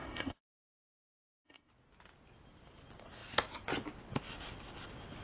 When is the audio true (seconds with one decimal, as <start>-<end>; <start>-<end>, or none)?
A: 1.7-5.2